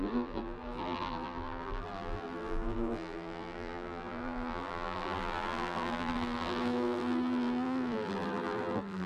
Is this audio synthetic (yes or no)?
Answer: yes